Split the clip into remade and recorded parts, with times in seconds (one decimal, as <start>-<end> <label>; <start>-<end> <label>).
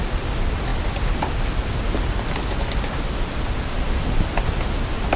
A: 0.0-5.2 recorded